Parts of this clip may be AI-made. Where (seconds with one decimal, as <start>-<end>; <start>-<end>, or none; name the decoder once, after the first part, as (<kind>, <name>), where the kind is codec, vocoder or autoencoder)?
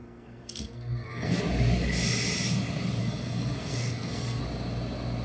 0.0-1.4 (codec, SNAC); 3.0-4.4